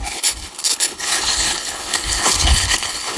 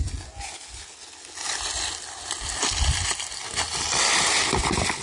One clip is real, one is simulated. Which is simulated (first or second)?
first